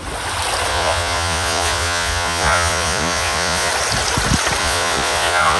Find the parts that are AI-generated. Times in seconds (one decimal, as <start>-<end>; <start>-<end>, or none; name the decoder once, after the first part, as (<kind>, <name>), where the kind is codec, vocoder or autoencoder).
0.7-3.7 (vocoder, Vocos); 4.6-5.6